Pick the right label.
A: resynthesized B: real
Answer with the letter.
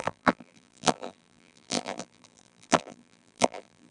A